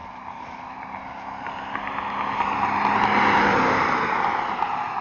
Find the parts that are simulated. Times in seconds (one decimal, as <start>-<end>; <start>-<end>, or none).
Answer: none